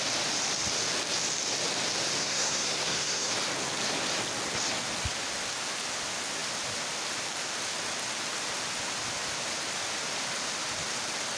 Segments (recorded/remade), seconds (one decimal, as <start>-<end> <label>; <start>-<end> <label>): 0.0-2.2 recorded; 2.2-3.3 remade; 3.3-11.4 recorded